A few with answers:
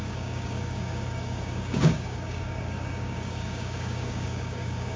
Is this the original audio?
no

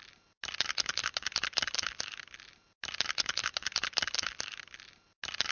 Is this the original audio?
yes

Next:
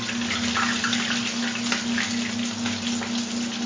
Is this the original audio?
yes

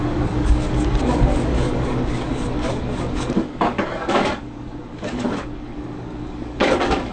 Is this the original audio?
no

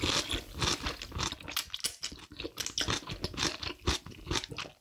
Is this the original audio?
yes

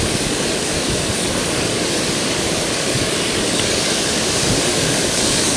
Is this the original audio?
no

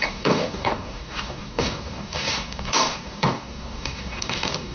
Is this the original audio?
no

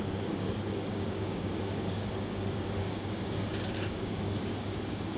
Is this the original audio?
no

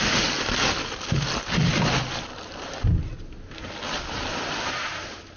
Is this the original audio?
yes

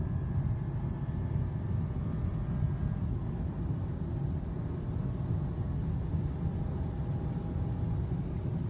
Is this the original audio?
yes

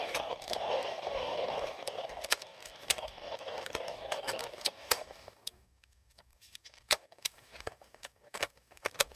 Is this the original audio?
no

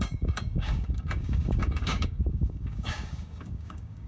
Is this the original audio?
no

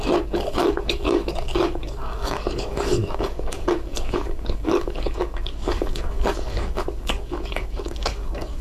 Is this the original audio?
no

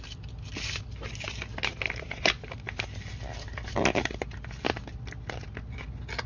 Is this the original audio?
yes